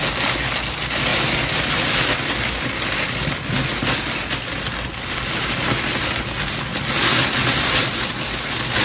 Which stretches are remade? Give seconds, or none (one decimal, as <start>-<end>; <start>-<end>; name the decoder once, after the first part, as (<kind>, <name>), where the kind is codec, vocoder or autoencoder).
none

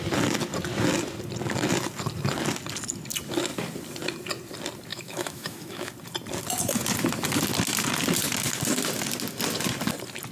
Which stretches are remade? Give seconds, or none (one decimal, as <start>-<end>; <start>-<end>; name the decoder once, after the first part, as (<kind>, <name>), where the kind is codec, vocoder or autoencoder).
4.9-5.9 (autoencoder, DAC-VAE)

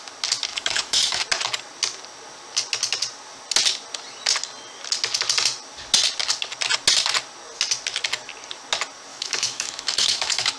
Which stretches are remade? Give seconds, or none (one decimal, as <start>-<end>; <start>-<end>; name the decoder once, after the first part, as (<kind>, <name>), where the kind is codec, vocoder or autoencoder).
0.5-1.2 (autoencoder, DAC-VAE); 9.1-10.6